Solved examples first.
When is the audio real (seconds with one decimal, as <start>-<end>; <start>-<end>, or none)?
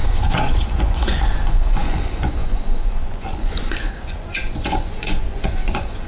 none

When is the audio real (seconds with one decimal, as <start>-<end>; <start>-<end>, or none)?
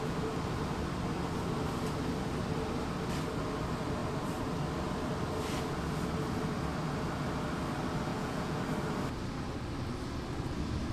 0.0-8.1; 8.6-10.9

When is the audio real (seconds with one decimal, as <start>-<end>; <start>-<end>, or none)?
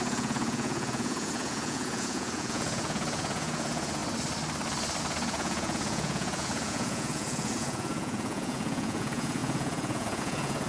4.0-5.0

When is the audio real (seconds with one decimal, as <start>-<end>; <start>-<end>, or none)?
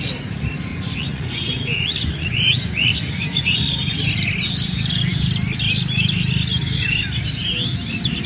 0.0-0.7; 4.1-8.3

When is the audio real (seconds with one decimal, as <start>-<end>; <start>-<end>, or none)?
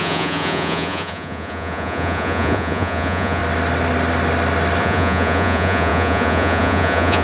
3.4-4.8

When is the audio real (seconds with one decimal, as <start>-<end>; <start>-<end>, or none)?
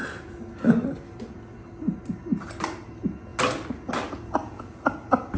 0.0-5.4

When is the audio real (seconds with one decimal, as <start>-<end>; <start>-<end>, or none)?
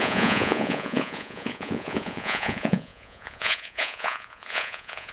none